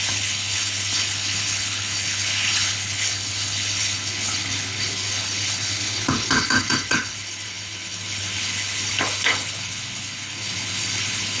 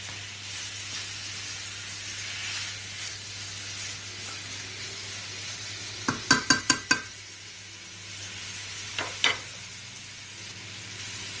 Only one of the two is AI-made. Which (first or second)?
first